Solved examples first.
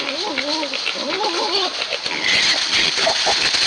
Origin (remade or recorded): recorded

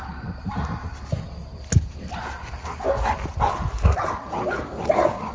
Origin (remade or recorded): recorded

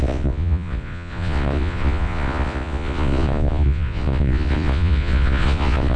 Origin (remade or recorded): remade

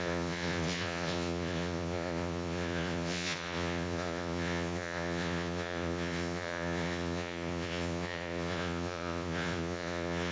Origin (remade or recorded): remade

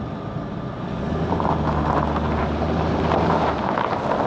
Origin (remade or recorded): recorded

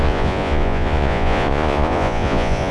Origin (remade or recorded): remade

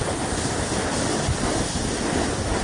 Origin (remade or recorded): recorded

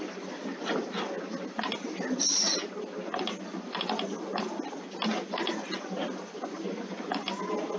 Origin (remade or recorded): recorded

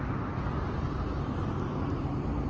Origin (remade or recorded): recorded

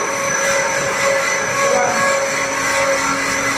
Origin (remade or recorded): recorded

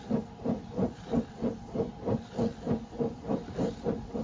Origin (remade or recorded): recorded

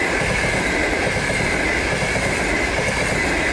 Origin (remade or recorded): recorded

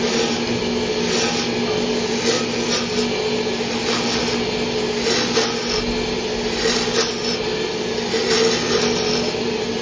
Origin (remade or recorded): recorded